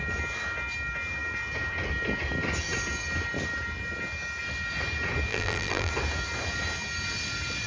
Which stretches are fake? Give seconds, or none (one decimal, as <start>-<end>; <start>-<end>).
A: 5.3-5.9